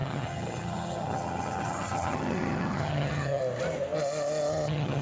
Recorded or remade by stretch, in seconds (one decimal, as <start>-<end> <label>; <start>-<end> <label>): 0.0-3.4 remade; 3.4-4.5 recorded; 4.5-5.0 remade

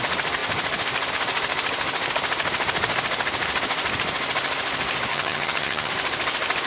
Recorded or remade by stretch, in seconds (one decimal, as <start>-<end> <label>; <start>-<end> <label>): 0.0-5.1 recorded; 5.1-5.9 remade; 5.9-6.7 recorded